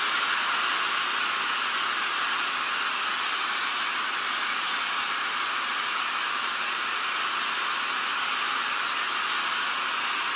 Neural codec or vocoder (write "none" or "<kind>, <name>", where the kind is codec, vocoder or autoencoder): none